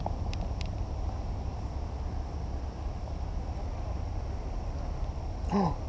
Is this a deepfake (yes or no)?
no